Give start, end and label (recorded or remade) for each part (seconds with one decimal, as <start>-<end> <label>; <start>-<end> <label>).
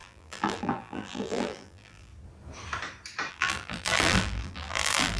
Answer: 0.0-2.1 remade; 2.1-3.3 recorded; 3.3-5.2 remade